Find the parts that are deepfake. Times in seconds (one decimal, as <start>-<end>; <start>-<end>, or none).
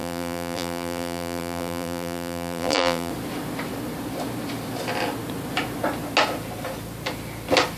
0.0-3.1